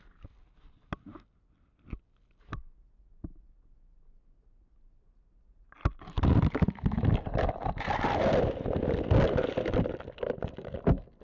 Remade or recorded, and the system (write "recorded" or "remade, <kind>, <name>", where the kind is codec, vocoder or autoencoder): recorded